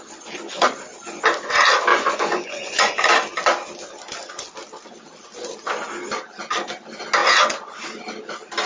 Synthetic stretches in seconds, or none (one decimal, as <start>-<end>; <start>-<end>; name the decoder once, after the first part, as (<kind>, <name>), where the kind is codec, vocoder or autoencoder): 1.9-3.1 (vocoder, Vocos)